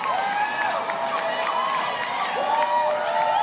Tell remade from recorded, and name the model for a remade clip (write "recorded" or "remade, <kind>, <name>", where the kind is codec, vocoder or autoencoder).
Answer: recorded